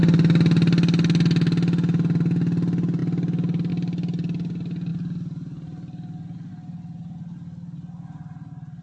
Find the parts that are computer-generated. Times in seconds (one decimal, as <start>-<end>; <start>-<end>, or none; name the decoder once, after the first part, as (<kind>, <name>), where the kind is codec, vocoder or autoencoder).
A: none